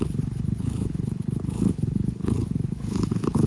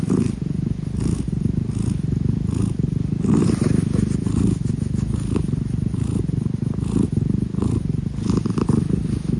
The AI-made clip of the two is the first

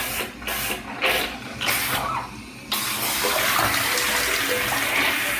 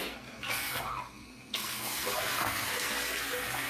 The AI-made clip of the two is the second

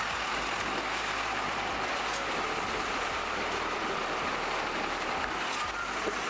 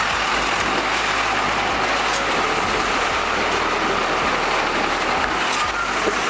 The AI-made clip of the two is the first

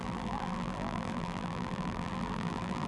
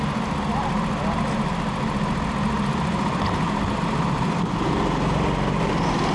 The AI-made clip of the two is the first